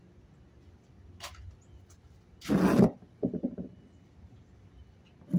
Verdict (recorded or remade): recorded